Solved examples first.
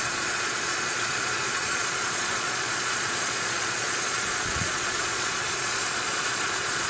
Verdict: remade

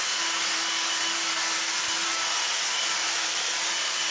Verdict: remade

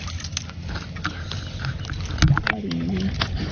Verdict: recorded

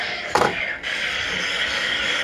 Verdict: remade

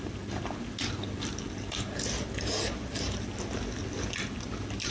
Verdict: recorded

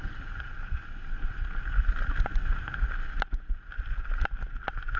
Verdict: recorded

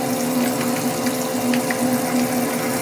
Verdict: recorded